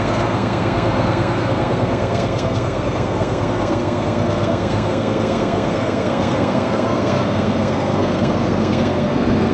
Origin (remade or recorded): remade